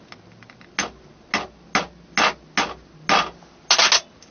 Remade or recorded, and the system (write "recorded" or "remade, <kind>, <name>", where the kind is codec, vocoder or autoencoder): recorded